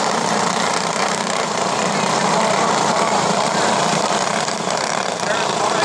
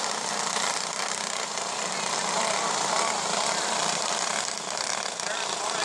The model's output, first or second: first